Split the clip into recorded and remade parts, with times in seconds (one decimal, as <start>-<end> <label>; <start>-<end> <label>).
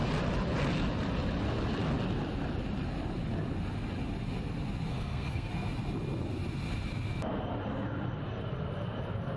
0.0-4.9 recorded; 4.9-5.5 remade; 5.5-9.4 recorded